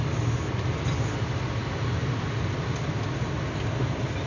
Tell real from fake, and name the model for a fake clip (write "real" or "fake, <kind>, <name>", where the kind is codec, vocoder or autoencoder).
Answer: real